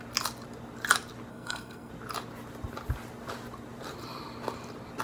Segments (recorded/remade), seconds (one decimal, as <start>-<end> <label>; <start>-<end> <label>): 0.0-1.3 recorded; 1.3-1.9 remade; 1.9-5.0 recorded